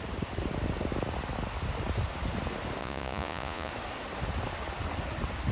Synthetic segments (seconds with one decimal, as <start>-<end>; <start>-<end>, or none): 2.8-3.7